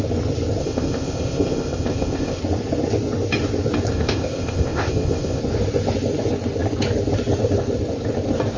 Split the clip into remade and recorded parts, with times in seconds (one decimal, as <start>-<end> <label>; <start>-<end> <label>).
0.0-0.6 recorded; 0.6-2.4 remade; 2.4-3.9 recorded; 3.9-5.4 remade; 5.4-8.6 recorded